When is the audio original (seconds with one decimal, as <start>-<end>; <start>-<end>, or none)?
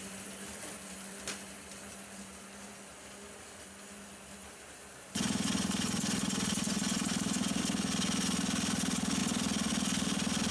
0.0-4.4; 7.6-10.5